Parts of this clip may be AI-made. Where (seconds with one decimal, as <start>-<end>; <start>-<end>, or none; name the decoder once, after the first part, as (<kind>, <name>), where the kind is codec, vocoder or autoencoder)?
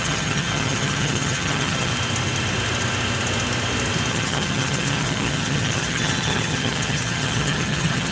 0.0-1.9 (vocoder, HiFi-GAN); 4.1-8.1